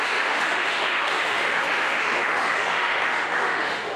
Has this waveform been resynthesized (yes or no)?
yes